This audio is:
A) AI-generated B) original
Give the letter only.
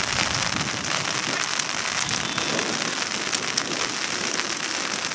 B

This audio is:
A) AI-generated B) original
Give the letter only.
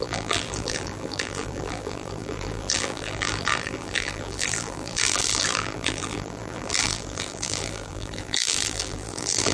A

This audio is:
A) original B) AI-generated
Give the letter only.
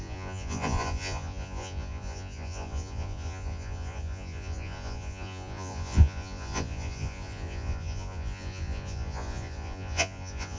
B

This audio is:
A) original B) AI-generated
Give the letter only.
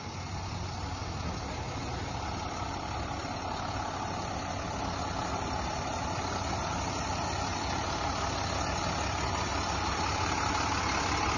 A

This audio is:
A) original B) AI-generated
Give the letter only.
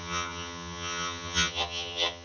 B